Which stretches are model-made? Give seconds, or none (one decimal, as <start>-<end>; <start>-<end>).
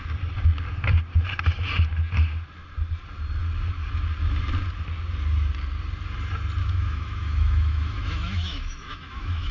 6.6-9.5